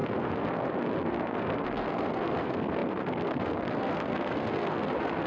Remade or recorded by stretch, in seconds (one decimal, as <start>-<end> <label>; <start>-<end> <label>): 0.0-5.3 remade

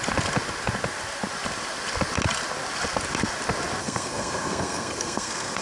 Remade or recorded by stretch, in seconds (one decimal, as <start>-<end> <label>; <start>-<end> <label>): 0.0-3.8 recorded; 3.8-5.6 remade

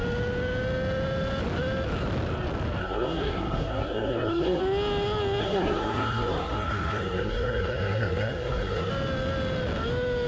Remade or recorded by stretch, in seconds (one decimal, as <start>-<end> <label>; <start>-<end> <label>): 0.0-2.8 recorded; 2.8-4.6 remade; 4.6-5.4 recorded; 5.4-8.9 remade; 8.9-10.3 recorded

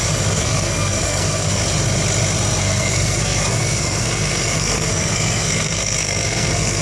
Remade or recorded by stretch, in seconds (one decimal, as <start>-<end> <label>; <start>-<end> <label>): 0.0-1.6 remade; 1.6-2.6 recorded; 2.6-6.8 remade

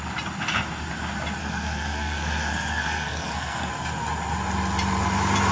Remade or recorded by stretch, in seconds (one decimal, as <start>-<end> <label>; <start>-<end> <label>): 0.0-1.4 recorded; 1.4-3.7 remade; 3.7-5.5 recorded

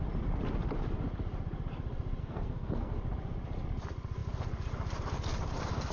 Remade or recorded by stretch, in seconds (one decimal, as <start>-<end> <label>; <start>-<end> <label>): 0.0-2.2 recorded; 2.2-2.9 remade; 2.9-5.9 recorded

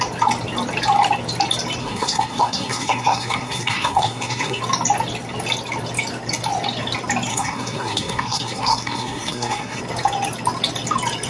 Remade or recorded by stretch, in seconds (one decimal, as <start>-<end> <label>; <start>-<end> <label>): 0.0-1.8 recorded; 1.8-4.6 remade; 4.6-7.3 recorded; 7.3-9.8 remade; 9.8-11.3 recorded